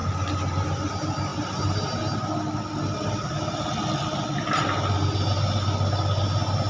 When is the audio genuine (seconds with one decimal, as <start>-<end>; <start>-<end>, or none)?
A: 0.0-6.7